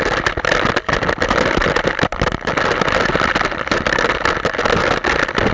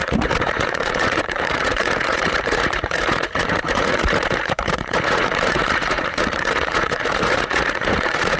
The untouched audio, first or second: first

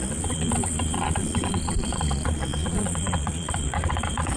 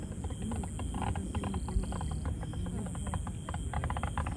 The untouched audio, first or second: second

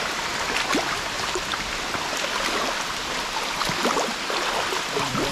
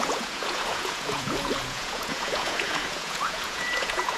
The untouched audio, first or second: first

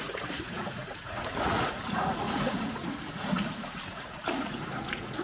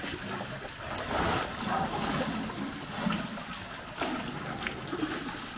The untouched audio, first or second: second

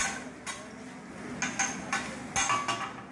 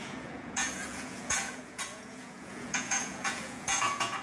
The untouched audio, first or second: first